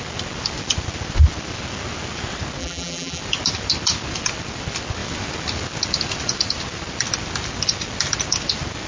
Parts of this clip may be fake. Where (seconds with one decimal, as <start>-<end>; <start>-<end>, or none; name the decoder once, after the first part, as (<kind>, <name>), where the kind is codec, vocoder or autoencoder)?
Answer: 2.6-3.2 (vocoder, BigVGAN v2)